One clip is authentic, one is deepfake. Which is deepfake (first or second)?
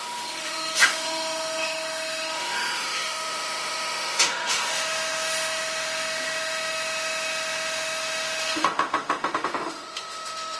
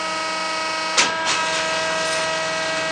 first